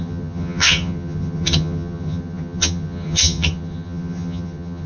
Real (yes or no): no